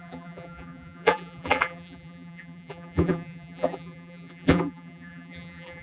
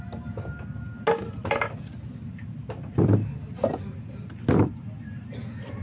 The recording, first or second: second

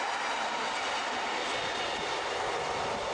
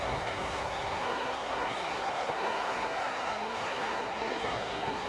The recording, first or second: first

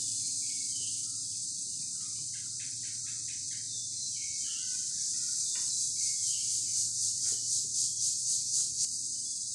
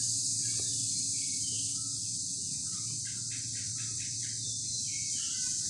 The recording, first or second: second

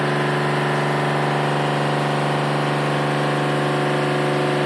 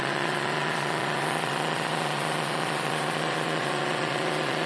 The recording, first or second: first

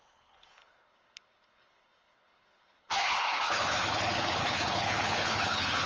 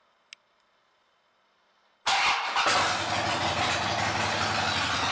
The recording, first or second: second